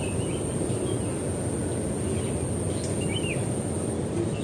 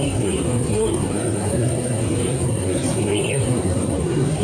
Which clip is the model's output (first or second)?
second